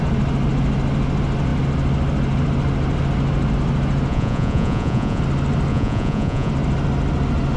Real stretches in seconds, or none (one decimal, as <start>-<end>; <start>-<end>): 0.0-4.1; 5.2-5.7; 6.5-7.6

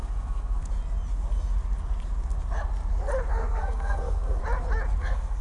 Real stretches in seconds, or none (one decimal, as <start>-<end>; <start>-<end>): 0.6-3.3; 4.4-5.0

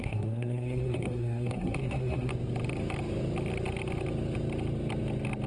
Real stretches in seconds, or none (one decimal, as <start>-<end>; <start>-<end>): 2.3-5.5

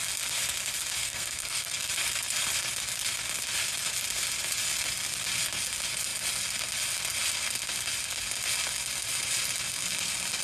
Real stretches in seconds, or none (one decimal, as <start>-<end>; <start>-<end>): 0.0-1.0; 1.9-10.4

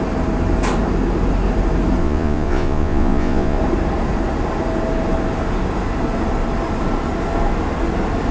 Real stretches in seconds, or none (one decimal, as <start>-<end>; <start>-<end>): 0.0-2.0; 3.6-8.3

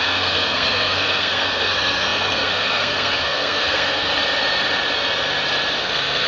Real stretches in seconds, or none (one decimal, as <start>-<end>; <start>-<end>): 4.1-5.8

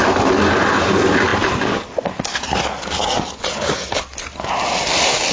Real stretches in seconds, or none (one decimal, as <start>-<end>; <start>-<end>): 0.0-5.3